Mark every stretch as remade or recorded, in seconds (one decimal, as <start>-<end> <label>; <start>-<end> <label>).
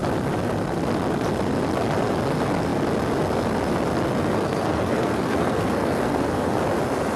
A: 0.0-4.2 recorded; 4.2-6.6 remade; 6.6-7.2 recorded